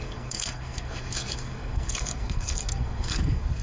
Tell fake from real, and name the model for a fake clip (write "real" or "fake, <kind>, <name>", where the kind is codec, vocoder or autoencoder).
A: fake, codec, SNAC